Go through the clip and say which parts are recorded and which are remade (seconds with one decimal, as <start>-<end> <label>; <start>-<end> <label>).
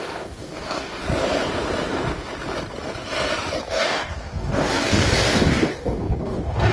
0.0-1.0 remade; 1.0-3.7 recorded; 3.7-6.7 remade